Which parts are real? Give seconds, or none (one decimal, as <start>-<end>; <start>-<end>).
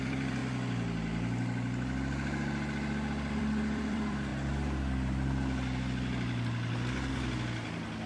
0.4-3.3; 4.3-7.1